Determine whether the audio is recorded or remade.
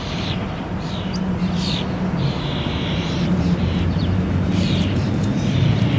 remade